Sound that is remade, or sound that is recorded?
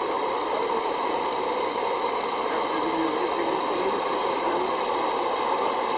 recorded